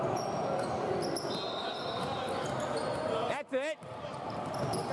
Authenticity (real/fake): real